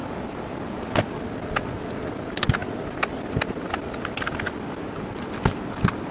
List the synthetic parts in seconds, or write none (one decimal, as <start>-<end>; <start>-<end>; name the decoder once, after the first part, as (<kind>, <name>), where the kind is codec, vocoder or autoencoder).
none